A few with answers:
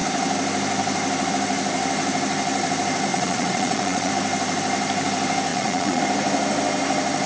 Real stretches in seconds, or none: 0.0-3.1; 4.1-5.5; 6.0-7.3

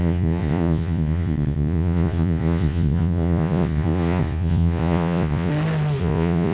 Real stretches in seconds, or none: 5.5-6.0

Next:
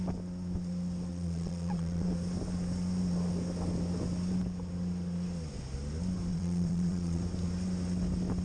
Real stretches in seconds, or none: 0.0-1.1; 2.1-6.3; 7.2-8.4

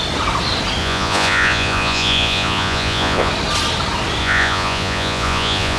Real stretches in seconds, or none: 0.0-0.8; 3.3-4.2

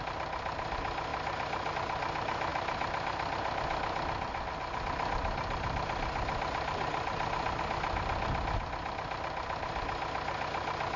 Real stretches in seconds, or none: 0.0-11.0